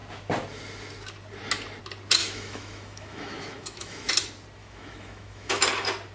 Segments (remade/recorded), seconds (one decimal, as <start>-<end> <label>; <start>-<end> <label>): 0.0-2.2 recorded; 2.2-4.1 remade; 4.1-4.6 recorded; 4.6-5.6 remade; 5.6-6.1 recorded